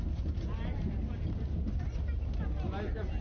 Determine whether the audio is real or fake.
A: real